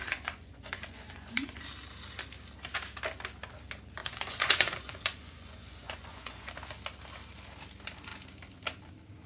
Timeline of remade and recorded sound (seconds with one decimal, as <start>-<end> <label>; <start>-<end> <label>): 0.0-1.6 remade; 1.6-4.0 recorded; 4.0-6.5 remade; 6.5-9.3 recorded

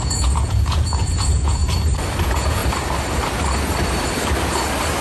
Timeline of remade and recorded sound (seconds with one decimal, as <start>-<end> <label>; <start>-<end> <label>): 0.0-1.6 remade; 1.6-2.2 recorded; 2.2-2.6 remade; 2.6-5.0 recorded

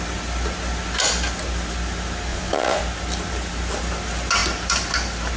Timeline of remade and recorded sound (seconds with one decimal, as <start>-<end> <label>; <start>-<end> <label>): 0.0-2.3 recorded; 2.3-2.8 remade; 2.8-5.4 recorded

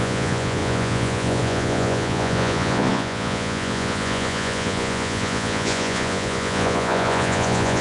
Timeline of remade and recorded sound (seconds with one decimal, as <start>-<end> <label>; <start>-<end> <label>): 0.0-7.8 remade